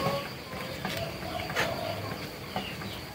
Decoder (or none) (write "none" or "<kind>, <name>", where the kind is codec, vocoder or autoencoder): none